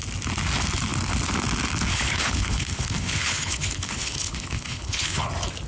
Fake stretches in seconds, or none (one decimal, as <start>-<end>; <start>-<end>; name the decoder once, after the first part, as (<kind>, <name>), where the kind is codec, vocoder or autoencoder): 1.9-5.3 (codec, HILCodec)

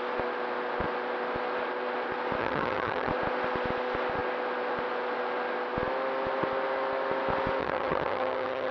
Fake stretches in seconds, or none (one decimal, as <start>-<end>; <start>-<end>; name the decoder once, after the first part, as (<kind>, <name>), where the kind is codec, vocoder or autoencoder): 2.4-3.1 (vocoder, HiFi-GAN); 7.6-8.7